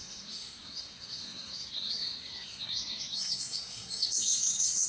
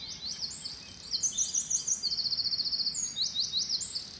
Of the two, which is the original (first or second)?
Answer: second